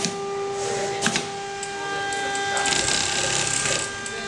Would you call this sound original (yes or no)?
yes